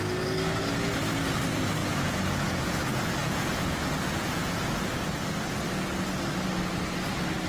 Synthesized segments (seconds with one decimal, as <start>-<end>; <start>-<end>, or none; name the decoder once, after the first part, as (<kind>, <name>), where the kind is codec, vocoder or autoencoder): 1.8-2.8 (vocoder, Vocos); 3.2-4.6